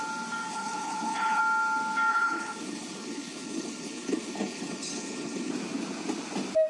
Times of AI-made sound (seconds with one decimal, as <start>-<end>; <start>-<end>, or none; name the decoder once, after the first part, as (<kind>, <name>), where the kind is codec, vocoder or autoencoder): 0.5-1.4 (codec, HILCodec); 2.1-5.5

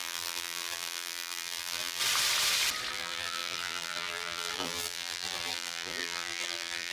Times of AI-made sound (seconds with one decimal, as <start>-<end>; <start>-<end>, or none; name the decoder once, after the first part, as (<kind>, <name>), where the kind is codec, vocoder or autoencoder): 0.0-2.0 (vocoder, BigVGAN v2); 2.9-6.9

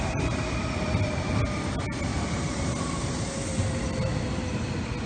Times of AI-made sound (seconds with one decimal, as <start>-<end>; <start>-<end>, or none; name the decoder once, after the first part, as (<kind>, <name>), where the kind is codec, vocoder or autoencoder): 2.1-3.3 (vocoder, BigVGAN v2)